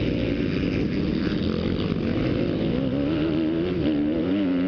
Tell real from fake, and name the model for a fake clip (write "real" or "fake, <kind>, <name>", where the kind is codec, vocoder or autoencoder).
real